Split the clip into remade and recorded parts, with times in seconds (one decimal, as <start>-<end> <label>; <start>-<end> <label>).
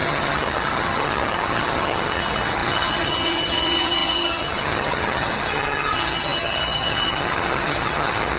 0.0-8.4 remade